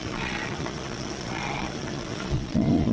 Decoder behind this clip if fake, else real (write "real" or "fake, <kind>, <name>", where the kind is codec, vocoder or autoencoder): fake, vocoder, Vocos